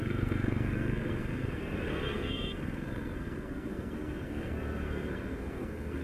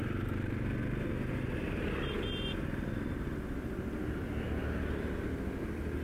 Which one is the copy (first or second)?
first